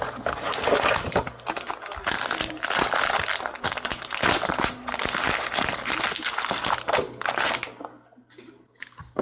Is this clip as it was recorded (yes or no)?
yes